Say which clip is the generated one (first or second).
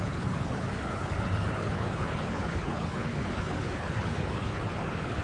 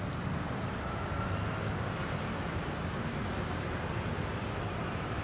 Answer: first